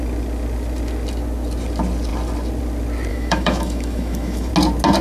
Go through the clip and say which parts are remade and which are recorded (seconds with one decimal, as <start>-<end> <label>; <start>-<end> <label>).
0.0-3.1 recorded; 3.1-4.5 remade; 4.5-5.0 recorded